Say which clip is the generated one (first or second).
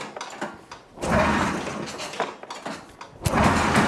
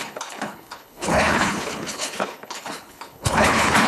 second